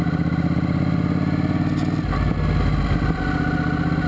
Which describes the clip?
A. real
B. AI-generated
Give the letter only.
A